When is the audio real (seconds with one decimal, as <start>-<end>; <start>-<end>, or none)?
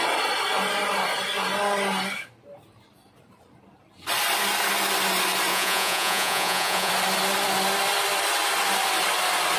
0.0-5.5; 6.9-9.6